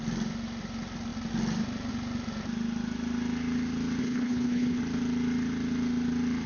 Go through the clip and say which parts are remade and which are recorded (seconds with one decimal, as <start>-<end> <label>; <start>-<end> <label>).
0.0-4.0 recorded; 4.0-4.8 remade; 4.8-6.5 recorded